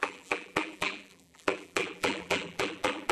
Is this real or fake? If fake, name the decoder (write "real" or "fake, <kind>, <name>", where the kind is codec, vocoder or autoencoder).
fake, vocoder, BigVGAN v2